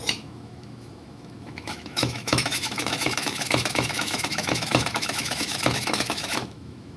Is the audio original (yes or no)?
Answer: no